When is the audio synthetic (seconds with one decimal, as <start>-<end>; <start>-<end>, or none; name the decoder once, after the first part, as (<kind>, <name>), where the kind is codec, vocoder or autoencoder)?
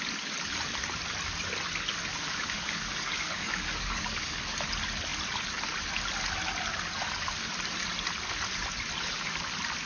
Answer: 2.1-4.4 (codec, DAC)